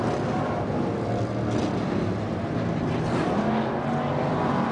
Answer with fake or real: real